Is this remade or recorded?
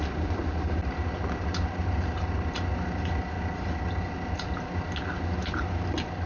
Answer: recorded